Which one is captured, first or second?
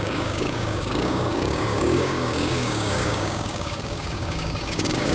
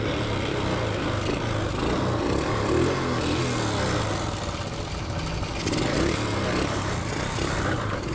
second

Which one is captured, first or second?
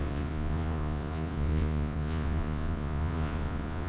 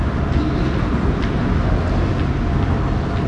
second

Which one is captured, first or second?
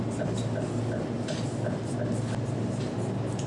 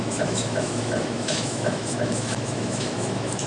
first